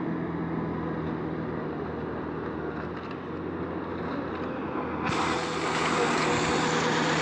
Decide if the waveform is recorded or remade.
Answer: recorded